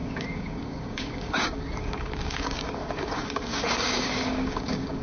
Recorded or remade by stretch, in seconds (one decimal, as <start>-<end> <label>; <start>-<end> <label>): 0.0-5.0 remade